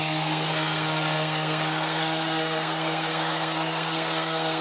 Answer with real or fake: fake